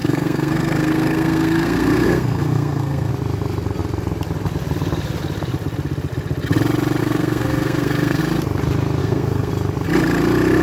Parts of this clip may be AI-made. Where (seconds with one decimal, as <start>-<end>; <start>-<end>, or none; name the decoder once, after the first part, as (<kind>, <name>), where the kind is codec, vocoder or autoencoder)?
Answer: 0.0-3.1 (codec, SNAC); 7.0-8.2; 9.0-9.5